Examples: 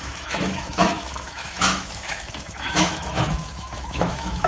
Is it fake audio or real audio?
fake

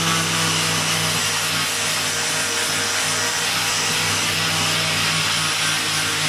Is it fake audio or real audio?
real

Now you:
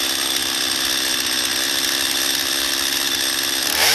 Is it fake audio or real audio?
real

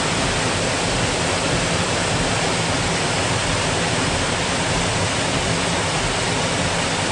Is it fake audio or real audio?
real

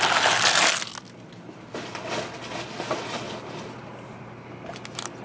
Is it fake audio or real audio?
real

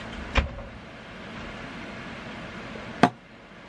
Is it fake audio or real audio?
real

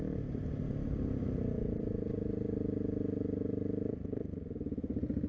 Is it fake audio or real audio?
real